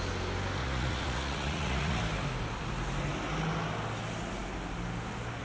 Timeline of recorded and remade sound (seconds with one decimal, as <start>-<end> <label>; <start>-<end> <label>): 0.0-0.6 recorded; 0.6-2.0 remade; 2.0-5.4 recorded